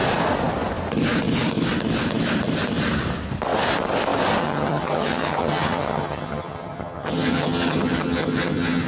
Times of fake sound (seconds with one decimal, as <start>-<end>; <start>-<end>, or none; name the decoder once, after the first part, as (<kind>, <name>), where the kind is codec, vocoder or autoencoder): 4.4-8.9 (vocoder, HiFi-GAN)